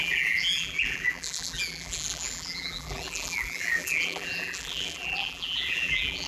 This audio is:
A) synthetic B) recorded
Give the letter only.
A